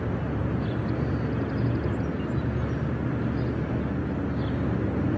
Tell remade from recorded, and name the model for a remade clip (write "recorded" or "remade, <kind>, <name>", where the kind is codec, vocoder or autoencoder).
recorded